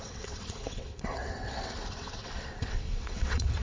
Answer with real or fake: fake